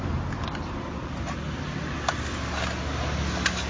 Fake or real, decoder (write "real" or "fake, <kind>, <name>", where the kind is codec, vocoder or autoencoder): real